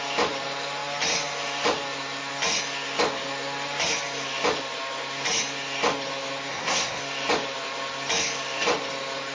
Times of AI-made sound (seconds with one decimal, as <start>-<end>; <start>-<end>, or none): 6.5-7.0